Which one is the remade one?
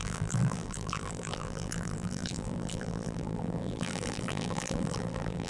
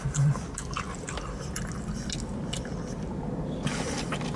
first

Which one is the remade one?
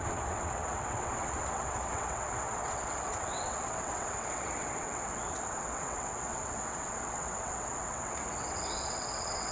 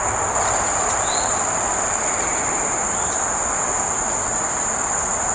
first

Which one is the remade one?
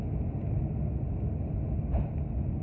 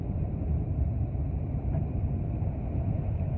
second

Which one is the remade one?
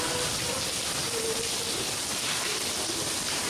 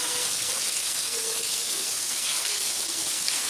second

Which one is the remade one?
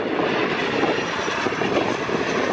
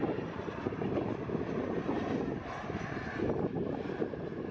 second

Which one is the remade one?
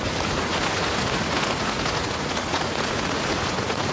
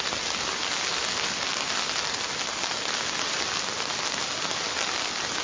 first